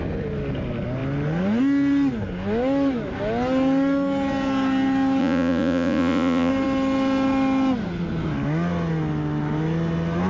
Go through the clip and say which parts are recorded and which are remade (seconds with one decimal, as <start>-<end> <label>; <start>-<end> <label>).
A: 0.0-5.2 recorded; 5.2-6.5 remade; 6.5-10.3 recorded